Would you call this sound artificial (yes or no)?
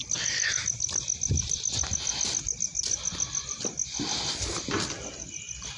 no